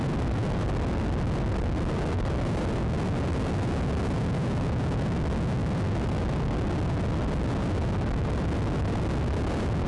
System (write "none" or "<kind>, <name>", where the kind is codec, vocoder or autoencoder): none